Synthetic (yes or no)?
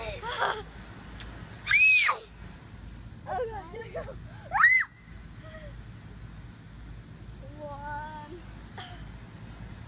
no